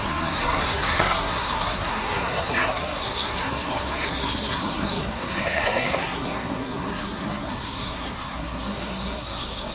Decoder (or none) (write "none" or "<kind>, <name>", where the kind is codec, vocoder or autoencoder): codec, SNAC